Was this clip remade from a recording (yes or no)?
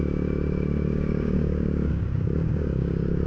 yes